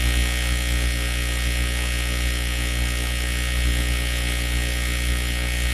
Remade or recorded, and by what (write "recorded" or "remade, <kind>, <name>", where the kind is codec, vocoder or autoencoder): recorded